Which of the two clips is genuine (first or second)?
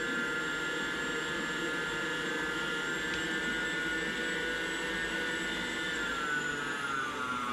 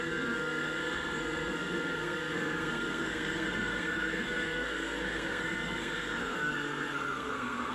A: first